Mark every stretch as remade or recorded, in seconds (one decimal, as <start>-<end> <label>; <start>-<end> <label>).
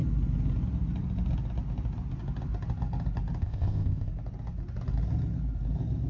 0.0-3.4 recorded; 3.4-4.1 remade; 4.1-6.1 recorded